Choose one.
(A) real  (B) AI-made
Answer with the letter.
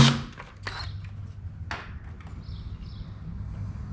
A